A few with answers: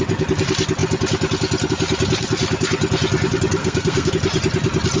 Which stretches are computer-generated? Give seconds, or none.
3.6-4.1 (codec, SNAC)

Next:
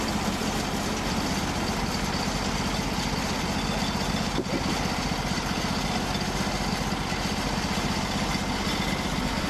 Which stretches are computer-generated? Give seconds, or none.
none

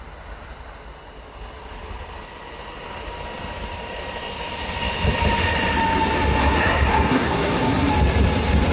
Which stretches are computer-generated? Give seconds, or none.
6.4-7.9 (codec, SNAC)

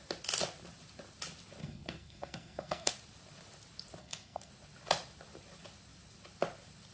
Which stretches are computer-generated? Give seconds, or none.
1.6-2.9 (codec, SNAC); 4.0-4.5

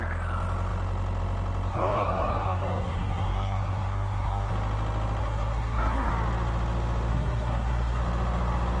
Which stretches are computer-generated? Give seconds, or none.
1.7-4.5 (codec, SNAC); 5.2-6.1; 7.1-8.0

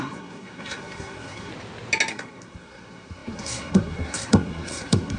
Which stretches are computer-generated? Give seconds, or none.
0.0-1.5 (codec, SNAC); 2.1-5.2